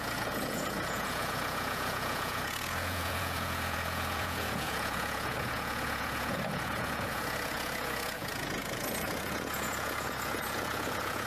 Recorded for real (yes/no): no